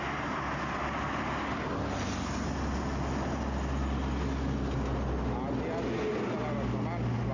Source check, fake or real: real